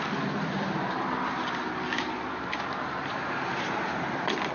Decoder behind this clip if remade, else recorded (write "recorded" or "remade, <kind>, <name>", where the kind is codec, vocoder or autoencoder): recorded